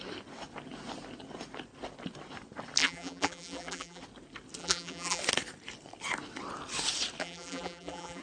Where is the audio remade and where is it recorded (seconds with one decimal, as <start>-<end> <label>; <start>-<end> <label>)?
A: 0.0-2.8 recorded; 2.8-4.0 remade; 4.0-4.6 recorded; 4.6-5.2 remade; 5.2-7.2 recorded; 7.2-8.2 remade